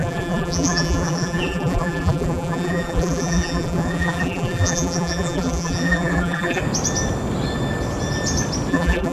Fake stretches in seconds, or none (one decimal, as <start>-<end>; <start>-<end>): 0.0-6.6; 8.7-9.1